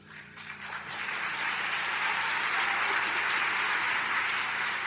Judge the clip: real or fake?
fake